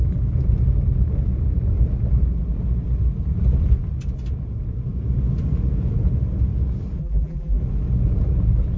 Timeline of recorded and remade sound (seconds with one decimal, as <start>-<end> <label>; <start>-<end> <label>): 0.0-7.0 recorded; 7.0-7.6 remade; 7.6-8.8 recorded